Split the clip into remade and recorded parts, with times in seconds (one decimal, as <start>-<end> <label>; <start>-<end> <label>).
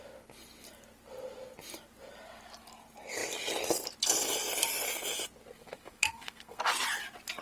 0.0-5.5 recorded; 5.5-6.6 remade; 6.6-7.4 recorded